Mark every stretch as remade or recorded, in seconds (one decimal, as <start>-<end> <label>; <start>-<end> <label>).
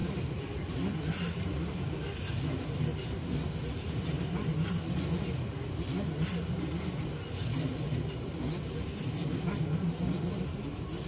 0.0-11.1 recorded